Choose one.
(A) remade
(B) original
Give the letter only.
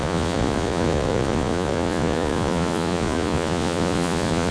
A